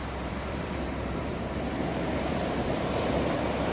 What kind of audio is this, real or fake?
fake